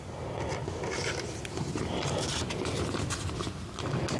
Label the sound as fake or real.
real